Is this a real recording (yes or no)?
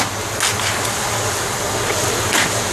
yes